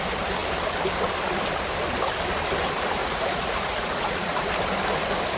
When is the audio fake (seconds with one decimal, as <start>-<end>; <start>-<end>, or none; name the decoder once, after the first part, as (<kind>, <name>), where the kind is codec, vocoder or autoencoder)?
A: 3.0-4.5 (vocoder, Vocos)